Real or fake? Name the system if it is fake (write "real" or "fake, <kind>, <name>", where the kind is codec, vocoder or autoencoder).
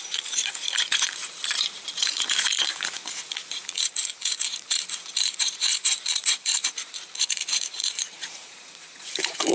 fake, vocoder, Vocos